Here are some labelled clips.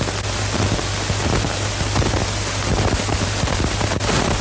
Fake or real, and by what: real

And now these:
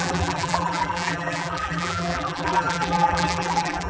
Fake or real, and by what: fake, vocoder, BigVGAN v2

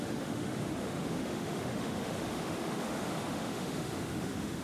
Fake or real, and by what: fake, autoencoder, DAC-VAE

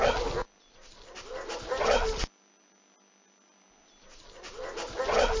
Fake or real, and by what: real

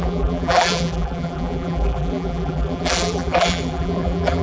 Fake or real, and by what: fake, vocoder, BigVGAN v2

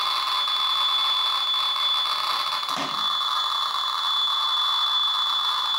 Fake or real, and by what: real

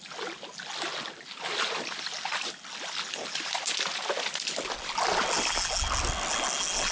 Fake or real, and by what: real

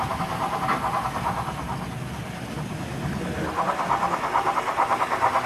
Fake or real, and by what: real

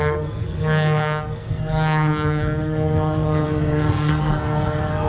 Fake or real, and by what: fake, codec, SNAC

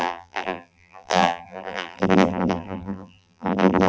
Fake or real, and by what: fake, vocoder, BigVGAN v2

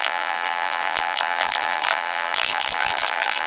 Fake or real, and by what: fake, vocoder, BigVGAN v2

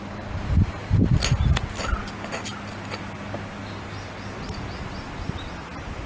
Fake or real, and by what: real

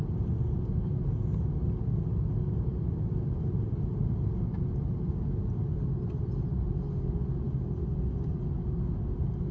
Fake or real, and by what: real